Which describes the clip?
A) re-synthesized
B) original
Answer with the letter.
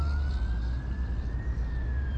B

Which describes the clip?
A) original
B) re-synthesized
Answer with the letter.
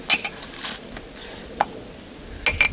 A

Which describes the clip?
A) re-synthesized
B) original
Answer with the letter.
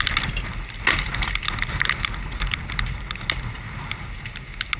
B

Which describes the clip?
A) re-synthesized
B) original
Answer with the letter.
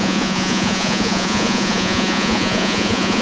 A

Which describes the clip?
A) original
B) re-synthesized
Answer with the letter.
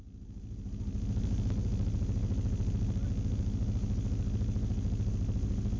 A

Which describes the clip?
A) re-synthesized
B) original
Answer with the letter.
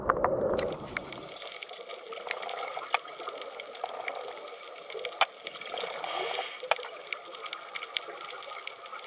B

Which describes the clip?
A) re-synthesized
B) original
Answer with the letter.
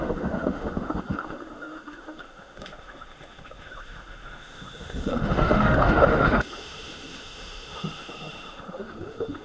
A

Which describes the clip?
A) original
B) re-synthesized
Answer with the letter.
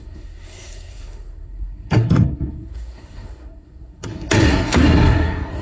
B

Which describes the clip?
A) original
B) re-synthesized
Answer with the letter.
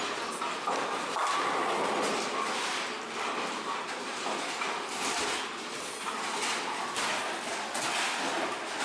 A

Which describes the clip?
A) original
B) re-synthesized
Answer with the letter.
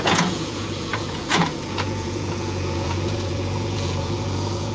B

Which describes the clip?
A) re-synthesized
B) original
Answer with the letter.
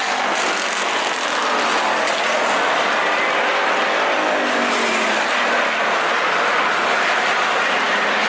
B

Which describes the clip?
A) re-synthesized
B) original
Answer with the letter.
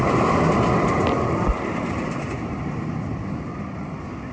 B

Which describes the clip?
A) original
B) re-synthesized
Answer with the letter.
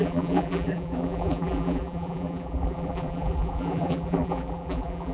B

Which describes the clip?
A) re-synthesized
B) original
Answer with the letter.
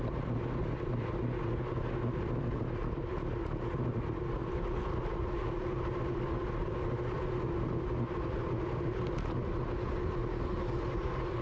B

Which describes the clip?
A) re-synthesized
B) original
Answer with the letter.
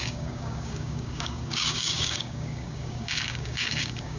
A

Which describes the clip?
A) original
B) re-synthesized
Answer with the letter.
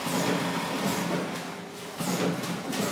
A